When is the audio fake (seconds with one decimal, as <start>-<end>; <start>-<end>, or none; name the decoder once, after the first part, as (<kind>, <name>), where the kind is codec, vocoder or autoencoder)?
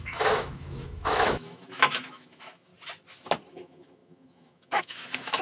0.0-2.7 (autoencoder, DAC-VAE); 3.5-5.4